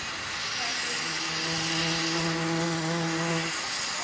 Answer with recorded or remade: recorded